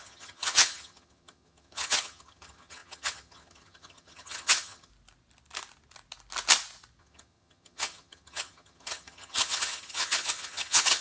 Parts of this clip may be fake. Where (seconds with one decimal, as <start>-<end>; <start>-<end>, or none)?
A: 0.0-4.9; 7.0-11.0